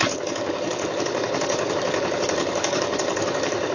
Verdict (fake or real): fake